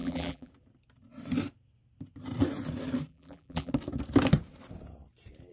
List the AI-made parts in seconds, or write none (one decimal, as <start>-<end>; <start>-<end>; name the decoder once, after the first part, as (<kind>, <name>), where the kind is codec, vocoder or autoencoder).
0.0-0.5 (vocoder, BigVGAN v2); 3.1-3.7